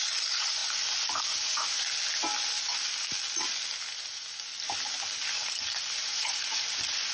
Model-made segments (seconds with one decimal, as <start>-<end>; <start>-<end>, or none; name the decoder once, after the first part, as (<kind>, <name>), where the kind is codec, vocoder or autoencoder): 6.0-7.1 (vocoder, Vocos)